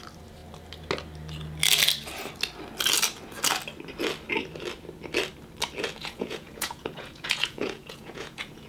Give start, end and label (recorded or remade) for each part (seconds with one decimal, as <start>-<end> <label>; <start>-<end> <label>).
0.0-6.0 recorded; 6.0-8.7 remade